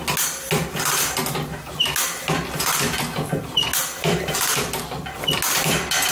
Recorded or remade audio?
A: recorded